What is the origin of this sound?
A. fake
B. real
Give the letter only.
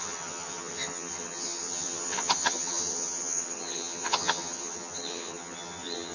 A